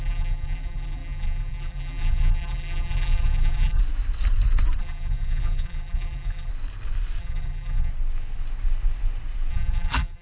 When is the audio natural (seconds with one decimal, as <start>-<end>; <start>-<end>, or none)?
3.8-4.8; 6.5-7.2; 7.9-9.5